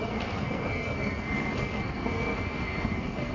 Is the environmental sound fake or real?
fake